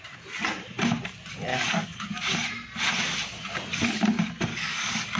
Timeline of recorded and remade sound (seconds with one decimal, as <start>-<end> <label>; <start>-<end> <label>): 0.0-1.5 recorded; 1.5-2.2 remade; 2.2-4.5 recorded; 4.5-5.2 remade